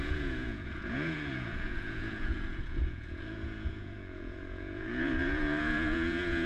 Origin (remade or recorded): remade